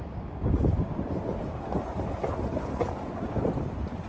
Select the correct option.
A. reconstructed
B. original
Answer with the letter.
B